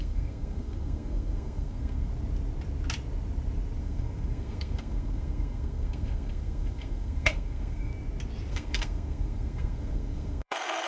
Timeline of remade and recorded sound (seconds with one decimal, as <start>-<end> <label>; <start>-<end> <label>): 0.0-2.1 remade; 2.1-3.8 recorded; 3.8-7.9 remade; 7.9-8.5 recorded; 8.5-10.9 remade